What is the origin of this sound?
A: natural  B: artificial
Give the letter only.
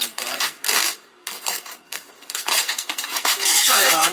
B